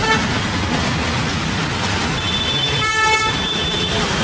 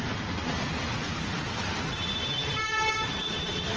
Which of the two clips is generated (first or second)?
second